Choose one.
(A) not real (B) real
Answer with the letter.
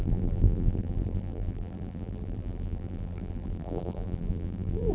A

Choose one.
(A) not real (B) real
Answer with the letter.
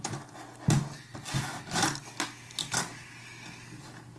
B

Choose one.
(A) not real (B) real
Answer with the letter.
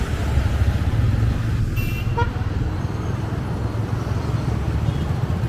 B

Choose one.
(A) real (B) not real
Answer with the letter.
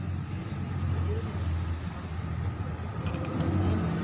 A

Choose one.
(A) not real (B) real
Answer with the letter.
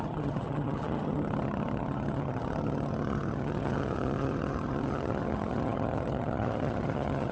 A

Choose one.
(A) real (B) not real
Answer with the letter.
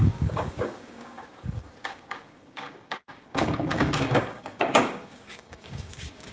B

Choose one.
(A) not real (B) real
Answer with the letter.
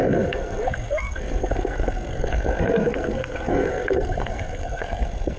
A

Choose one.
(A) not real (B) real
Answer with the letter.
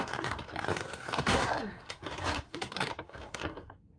A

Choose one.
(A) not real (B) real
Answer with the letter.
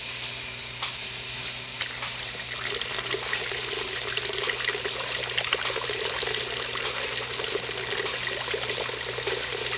B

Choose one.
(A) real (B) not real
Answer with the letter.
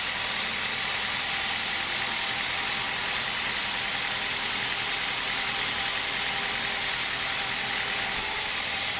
A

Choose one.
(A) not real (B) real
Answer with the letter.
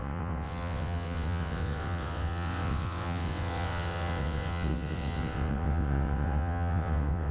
A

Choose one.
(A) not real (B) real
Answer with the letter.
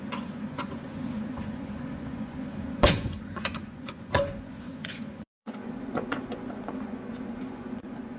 A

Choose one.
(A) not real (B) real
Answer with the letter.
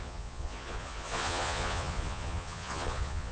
A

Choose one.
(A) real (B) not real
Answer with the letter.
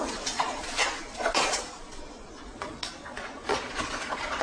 B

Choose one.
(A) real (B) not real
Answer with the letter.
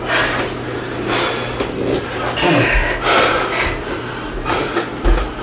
A